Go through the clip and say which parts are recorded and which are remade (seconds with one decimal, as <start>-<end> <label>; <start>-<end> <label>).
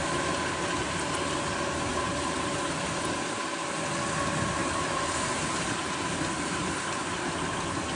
0.0-1.9 recorded; 1.9-2.4 remade; 2.4-4.6 recorded; 4.6-7.4 remade; 7.4-8.0 recorded